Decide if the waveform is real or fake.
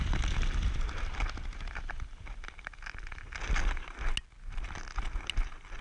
real